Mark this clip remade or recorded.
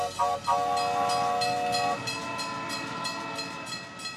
recorded